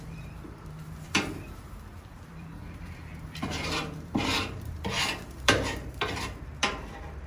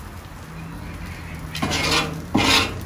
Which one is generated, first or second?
first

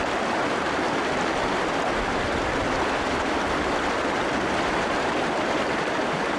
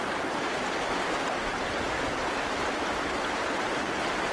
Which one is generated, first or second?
second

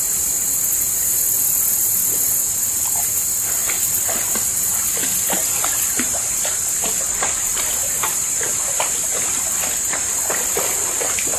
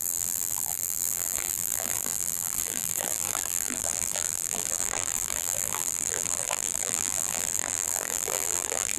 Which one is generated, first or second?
second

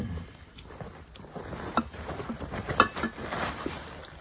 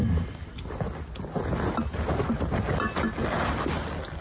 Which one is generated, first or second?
first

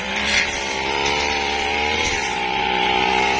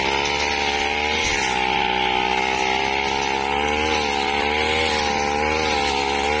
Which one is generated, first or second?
first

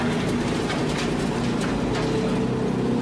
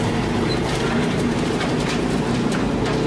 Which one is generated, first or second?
second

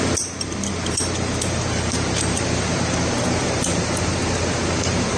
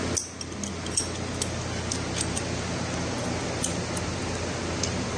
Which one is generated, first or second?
first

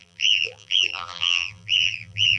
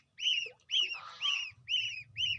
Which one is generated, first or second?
first